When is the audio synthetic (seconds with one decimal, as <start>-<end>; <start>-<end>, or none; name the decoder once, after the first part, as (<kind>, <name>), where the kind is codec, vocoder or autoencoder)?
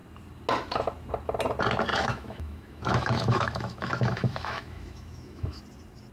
1.9-5.6 (autoencoder, DAC-VAE)